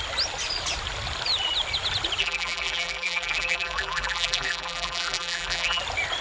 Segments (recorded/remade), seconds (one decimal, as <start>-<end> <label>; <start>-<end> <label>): 0.0-2.2 recorded; 2.2-5.8 remade; 5.8-6.2 recorded